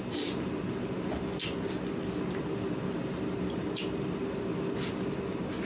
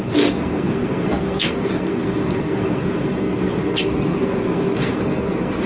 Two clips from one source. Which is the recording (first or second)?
first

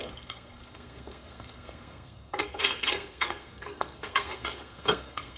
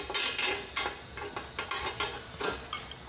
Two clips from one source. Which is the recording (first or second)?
second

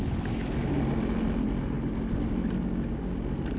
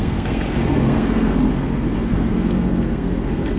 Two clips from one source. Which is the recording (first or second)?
first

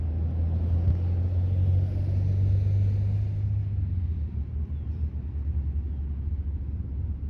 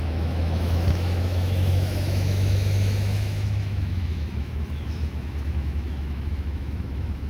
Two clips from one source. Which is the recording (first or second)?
first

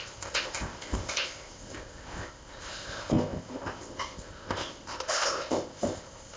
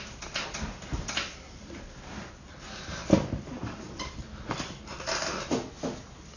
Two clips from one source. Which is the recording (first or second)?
second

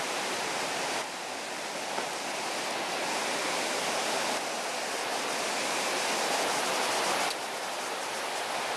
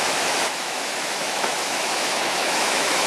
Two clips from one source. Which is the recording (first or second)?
first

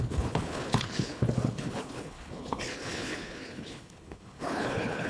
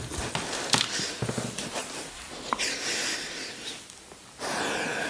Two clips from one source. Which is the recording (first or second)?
second